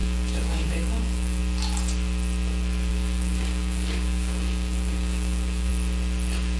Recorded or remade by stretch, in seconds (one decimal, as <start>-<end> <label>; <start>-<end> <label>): 0.0-1.4 remade; 1.4-2.9 recorded; 2.9-5.7 remade; 5.7-6.6 recorded